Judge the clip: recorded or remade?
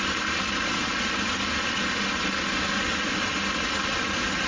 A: recorded